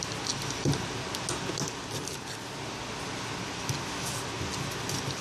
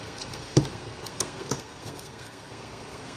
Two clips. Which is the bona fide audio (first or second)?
first